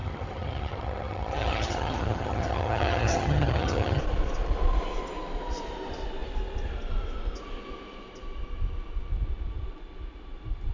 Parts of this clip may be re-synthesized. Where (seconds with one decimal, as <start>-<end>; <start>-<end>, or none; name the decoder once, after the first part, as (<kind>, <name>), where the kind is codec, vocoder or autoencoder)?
0.0-4.0 (vocoder, HiFi-GAN)

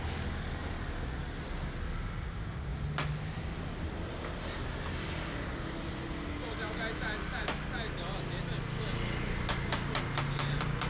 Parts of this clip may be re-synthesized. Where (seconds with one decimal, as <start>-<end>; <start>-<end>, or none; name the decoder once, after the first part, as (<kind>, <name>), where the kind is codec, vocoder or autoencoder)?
none

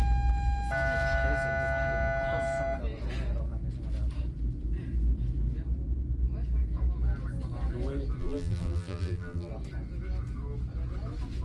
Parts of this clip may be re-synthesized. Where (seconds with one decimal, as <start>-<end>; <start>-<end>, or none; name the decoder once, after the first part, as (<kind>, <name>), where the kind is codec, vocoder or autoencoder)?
8.2-9.5 (vocoder, BigVGAN v2)

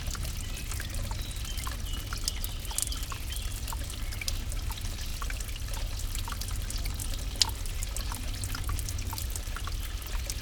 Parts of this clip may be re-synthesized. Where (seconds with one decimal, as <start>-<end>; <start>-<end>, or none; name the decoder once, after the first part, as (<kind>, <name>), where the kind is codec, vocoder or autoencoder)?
2.8-3.9 (vocoder, BigVGAN v2); 5.1-5.7

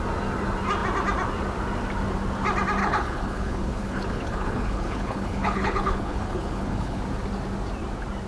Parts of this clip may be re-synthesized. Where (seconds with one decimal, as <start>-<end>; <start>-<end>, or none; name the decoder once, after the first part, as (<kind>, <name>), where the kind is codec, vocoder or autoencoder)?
2.8-7.0 (codec, HILCodec)

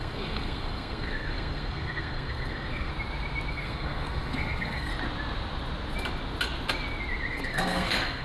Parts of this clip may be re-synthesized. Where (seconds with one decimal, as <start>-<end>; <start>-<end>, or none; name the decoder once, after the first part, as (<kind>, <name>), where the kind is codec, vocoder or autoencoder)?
0.0-2.9 (codec, SNAC); 3.5-4.9; 7.3-8.2

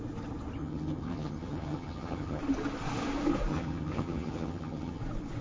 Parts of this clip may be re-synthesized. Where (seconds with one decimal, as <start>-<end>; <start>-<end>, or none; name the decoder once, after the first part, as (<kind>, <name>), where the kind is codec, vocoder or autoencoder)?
0.6-2.4 (vocoder, HiFi-GAN); 3.5-5.0